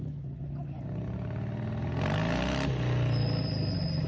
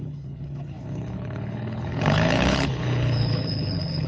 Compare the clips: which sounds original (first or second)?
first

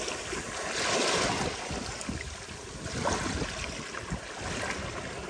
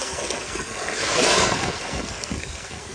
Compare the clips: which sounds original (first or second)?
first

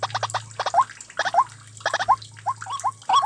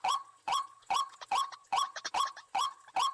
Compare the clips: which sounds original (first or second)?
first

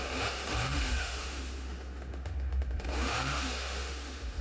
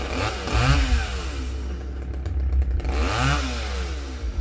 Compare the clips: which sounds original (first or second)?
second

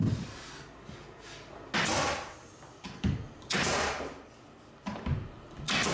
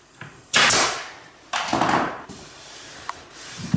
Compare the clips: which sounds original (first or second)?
first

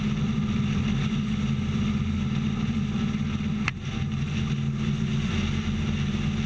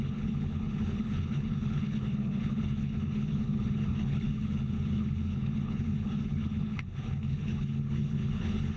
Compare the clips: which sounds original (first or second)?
first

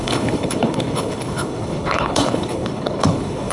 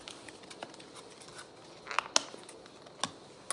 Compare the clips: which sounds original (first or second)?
second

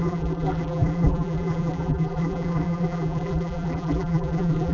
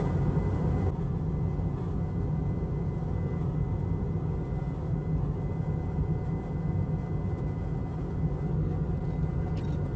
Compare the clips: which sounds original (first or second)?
second